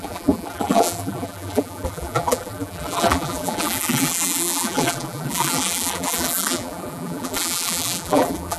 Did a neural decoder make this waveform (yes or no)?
yes